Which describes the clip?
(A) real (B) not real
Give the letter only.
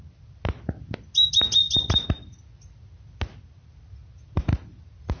A